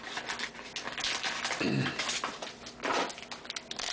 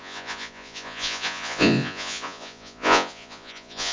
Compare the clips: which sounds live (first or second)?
first